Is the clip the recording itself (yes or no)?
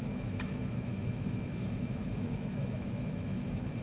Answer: no